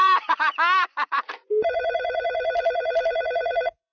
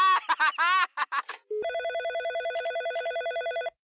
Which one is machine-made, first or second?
first